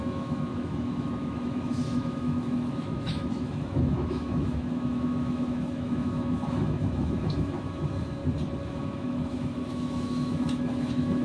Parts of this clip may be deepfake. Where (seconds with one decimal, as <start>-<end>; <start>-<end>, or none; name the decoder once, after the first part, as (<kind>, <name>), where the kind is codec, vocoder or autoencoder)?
0.0-8.2 (autoencoder, DAC-VAE); 8.7-11.2